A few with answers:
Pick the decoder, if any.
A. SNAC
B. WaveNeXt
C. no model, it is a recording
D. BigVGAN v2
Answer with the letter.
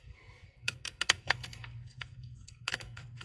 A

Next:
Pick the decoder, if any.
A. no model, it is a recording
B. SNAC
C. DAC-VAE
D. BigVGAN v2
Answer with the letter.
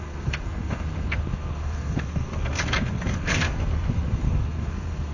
B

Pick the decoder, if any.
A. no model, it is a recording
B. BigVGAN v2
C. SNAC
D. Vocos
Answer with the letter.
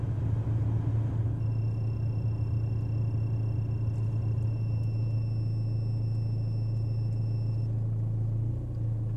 A